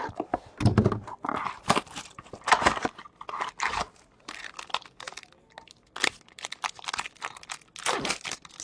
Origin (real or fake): real